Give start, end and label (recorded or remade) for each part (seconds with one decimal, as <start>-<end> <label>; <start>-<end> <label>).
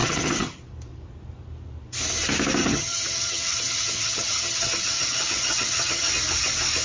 0.0-0.6 remade; 0.6-2.6 recorded; 2.6-6.1 remade; 6.1-6.8 recorded